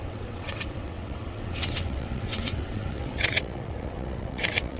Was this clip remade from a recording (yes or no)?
yes